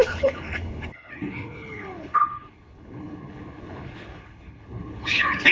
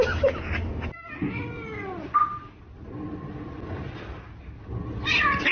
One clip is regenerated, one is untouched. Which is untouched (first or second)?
second